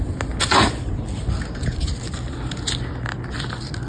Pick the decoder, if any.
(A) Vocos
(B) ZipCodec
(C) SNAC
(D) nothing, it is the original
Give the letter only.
D